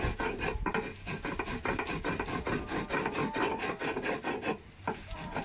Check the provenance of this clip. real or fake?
real